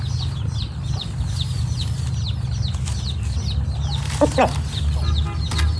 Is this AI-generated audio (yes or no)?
no